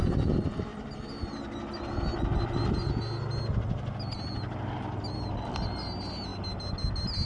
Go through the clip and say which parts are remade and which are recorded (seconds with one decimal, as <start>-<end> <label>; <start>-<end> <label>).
0.0-7.3 recorded